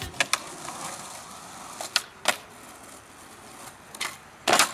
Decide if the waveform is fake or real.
real